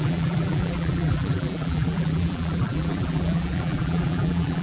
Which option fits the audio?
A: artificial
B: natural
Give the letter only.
A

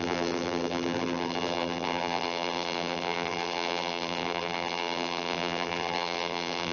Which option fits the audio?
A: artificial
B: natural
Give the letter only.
A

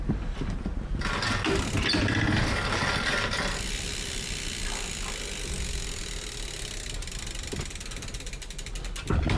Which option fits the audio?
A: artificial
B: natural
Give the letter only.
B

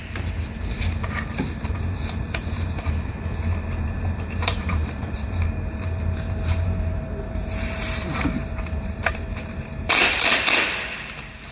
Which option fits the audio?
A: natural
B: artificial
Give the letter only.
B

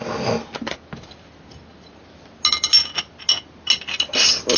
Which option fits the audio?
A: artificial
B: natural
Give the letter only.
B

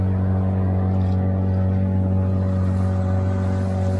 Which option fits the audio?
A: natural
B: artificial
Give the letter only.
A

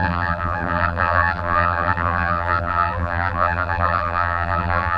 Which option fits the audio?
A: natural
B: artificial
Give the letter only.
B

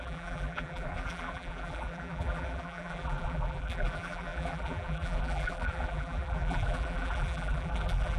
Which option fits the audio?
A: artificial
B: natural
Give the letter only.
A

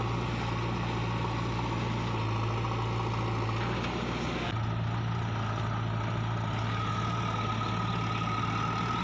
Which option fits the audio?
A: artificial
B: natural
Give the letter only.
B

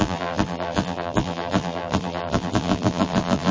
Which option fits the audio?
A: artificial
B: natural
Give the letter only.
A